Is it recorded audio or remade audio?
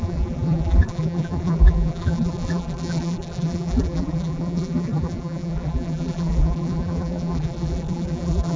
remade